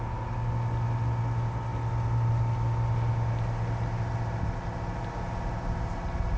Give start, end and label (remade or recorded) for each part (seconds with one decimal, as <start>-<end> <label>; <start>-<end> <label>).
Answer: 0.0-6.4 recorded